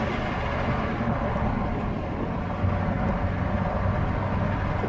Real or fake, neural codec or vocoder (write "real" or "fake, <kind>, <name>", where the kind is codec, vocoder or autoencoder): real